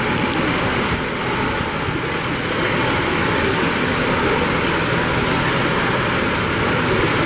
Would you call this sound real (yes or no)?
yes